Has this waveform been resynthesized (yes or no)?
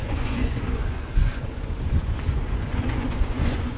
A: yes